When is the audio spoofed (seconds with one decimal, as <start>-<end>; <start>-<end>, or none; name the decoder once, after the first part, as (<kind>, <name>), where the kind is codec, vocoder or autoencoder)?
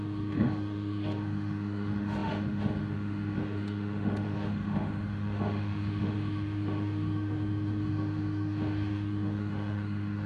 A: 0.0-10.3 (autoencoder, DAC-VAE)